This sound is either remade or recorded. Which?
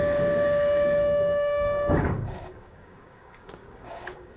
remade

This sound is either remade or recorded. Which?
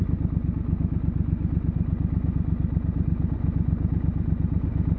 recorded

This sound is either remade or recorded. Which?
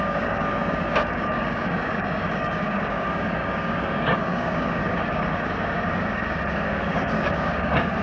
remade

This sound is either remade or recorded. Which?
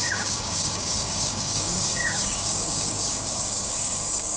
remade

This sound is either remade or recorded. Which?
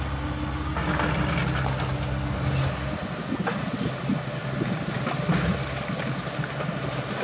recorded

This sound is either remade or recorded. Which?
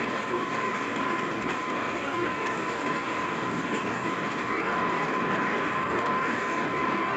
remade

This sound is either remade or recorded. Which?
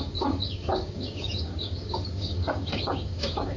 remade